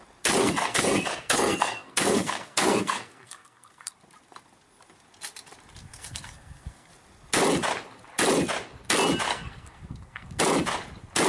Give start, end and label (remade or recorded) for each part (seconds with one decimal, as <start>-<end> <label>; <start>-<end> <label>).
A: 0.0-0.4 recorded; 0.4-3.9 remade; 3.9-5.8 recorded; 5.8-6.9 remade; 6.9-9.3 recorded; 9.3-10.4 remade; 10.4-11.3 recorded